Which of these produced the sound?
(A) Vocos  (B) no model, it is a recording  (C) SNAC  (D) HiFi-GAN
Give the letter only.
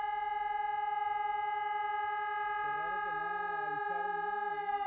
B